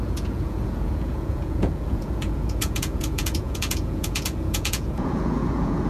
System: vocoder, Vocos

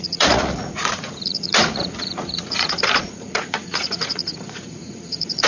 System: vocoder, Vocos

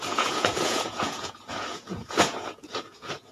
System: vocoder, Vocos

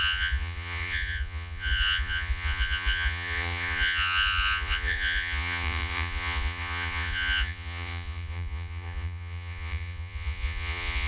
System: vocoder, Vocos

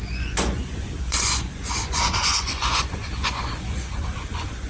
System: vocoder, Vocos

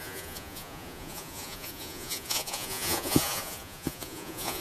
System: vocoder, Vocos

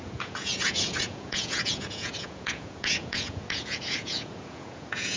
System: vocoder, Vocos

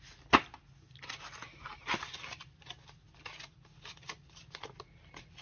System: none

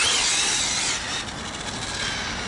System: none